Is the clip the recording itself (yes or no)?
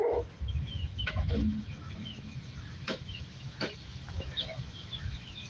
no